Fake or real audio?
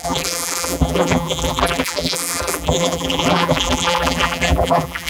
fake